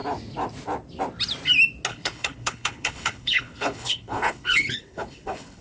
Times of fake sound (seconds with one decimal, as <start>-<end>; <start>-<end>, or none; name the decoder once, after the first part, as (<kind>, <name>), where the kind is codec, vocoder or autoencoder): 1.9-5.6 (codec, HILCodec)